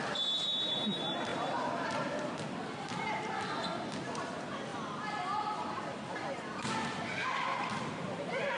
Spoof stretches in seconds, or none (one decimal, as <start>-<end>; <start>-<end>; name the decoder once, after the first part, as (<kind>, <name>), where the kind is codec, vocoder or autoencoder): 1.3-2.3 (vocoder, BigVGAN v2)